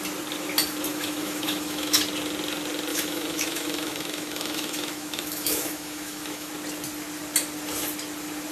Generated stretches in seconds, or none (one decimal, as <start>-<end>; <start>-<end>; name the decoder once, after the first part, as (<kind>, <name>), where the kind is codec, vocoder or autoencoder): 0.9-2.0 (autoencoder, DAC-VAE); 2.9-6.5